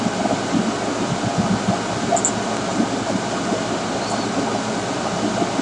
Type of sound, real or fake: real